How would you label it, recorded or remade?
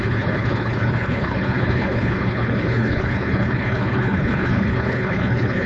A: remade